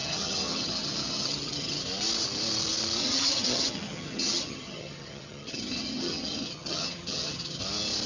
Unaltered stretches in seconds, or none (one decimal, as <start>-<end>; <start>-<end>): 1.8-3.0; 7.6-8.1